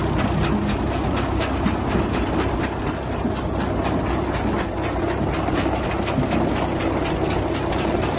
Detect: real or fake real